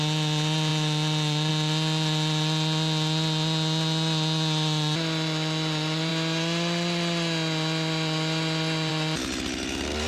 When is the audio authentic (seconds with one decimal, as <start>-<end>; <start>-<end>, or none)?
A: 0.0-10.1